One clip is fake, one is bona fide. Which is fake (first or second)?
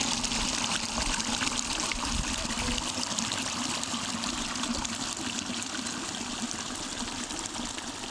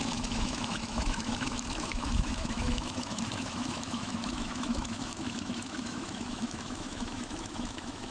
second